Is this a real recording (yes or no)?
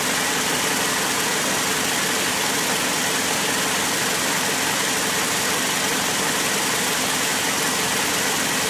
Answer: yes